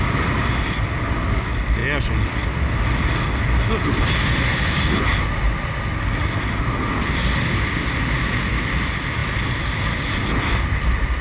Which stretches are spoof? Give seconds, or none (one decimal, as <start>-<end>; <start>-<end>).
none